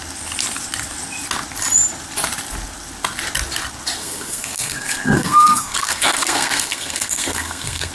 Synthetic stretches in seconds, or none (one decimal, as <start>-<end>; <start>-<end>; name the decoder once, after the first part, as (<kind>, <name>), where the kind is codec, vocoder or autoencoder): 4.0-7.9 (codec, SNAC)